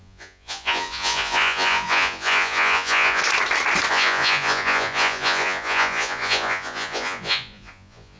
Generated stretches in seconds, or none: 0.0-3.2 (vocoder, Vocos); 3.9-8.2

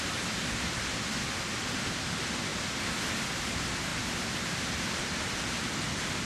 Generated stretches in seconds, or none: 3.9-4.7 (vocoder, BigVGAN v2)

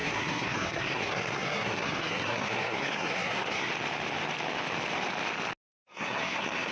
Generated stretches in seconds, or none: 0.0-3.7 (codec, SNAC); 5.7-6.7

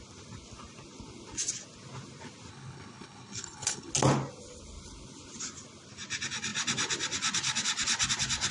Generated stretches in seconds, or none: 2.5-3.9 (codec, HILCodec)